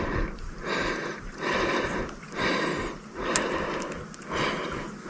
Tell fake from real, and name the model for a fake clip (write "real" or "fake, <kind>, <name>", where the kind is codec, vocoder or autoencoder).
real